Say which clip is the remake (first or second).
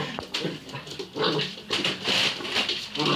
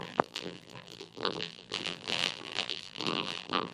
second